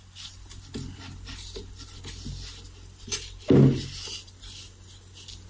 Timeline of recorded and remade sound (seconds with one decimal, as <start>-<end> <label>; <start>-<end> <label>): 0.0-5.5 recorded